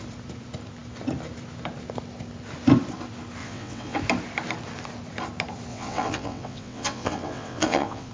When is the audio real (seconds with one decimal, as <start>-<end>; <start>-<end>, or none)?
0.0-3.4; 4.0-5.7